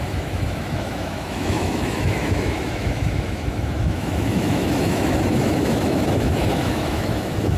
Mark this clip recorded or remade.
remade